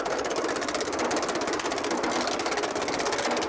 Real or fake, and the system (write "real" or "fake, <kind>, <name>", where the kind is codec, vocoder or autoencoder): real